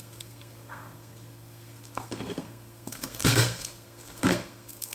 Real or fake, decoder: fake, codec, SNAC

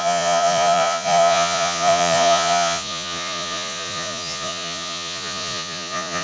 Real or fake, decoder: fake, vocoder, Vocos